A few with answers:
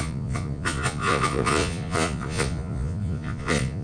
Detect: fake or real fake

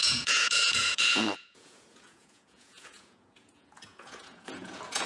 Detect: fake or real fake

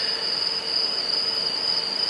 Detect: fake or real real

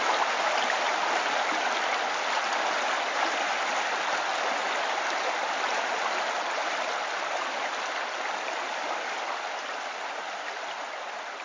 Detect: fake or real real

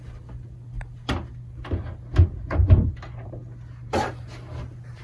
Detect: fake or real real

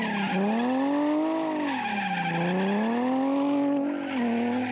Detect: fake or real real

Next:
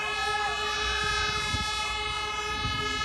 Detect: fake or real real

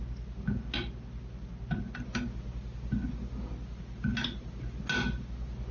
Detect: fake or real real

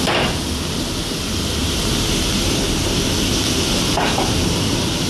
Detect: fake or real real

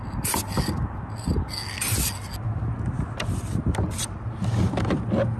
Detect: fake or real real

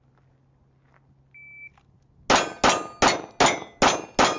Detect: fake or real real